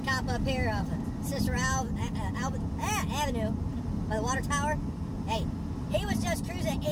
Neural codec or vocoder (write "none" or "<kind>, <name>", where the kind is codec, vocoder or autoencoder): none